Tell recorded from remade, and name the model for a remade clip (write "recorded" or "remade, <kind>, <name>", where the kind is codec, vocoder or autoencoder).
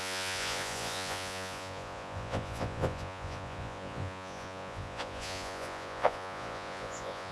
remade, vocoder, Vocos